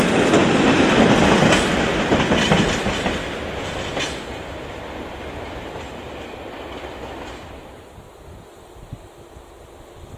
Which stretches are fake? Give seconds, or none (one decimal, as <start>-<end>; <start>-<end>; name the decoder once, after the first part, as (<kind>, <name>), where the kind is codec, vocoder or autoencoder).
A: none